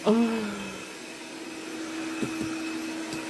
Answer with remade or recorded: recorded